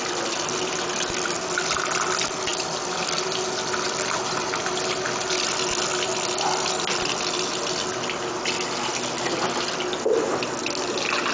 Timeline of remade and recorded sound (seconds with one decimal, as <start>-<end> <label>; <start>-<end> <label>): 0.0-11.3 recorded